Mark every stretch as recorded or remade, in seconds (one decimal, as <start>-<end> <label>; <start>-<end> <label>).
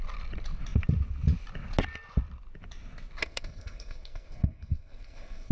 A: 0.0-3.2 recorded; 3.2-5.5 remade